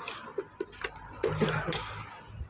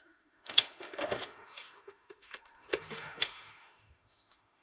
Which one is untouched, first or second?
first